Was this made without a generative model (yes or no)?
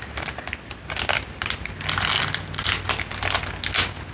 yes